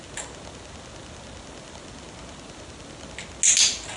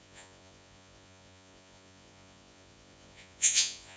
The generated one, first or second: second